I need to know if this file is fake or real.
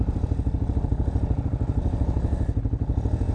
real